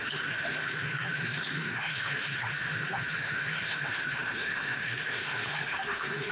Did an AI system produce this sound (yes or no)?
yes